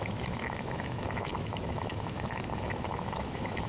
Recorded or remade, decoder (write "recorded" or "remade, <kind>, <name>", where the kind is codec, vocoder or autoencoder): remade, autoencoder, DAC-VAE